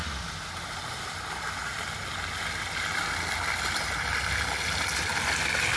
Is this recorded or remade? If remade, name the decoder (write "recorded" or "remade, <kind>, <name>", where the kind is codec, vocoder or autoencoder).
recorded